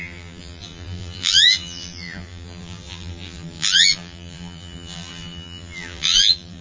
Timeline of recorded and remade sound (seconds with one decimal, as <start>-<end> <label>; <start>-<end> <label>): 0.0-6.6 remade